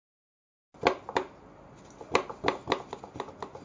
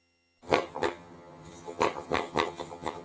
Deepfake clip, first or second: second